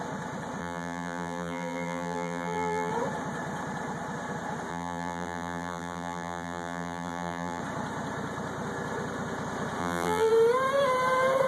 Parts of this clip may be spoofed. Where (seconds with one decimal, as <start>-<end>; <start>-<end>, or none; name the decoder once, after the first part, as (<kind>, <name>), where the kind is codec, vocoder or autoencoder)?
0.6-2.9 (vocoder, BigVGAN v2); 4.7-7.6; 9.8-10.3